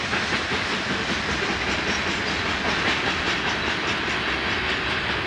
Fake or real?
real